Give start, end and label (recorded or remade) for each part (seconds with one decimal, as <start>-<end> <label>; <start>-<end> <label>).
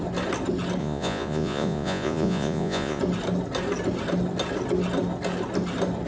0.0-0.8 recorded; 0.8-3.0 remade; 3.0-6.1 recorded